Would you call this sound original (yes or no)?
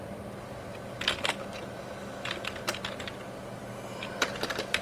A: yes